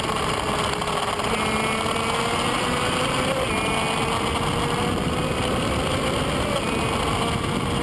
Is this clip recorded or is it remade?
recorded